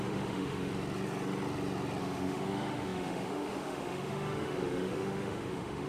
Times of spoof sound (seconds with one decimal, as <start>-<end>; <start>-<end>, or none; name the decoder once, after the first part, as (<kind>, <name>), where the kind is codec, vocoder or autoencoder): 0.0-0.7 (autoencoder, DAC-VAE); 2.0-5.9